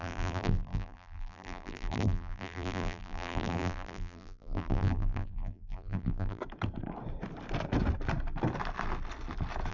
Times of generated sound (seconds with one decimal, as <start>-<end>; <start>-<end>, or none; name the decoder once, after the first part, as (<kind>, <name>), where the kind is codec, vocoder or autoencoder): 0.0-6.4 (vocoder, BigVGAN v2)